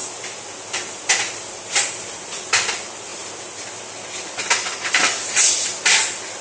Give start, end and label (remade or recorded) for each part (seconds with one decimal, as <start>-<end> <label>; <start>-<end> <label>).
0.0-6.4 recorded